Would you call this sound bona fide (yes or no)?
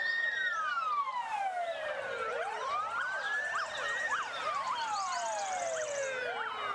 no